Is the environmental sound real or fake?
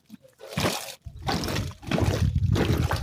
real